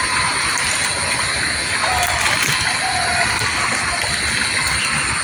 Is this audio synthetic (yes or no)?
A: no